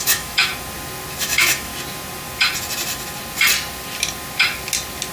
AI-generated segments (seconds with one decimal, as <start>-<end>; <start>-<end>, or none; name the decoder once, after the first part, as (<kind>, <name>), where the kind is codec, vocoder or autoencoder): 0.0-0.5 (autoencoder, DAC-VAE); 1.2-1.7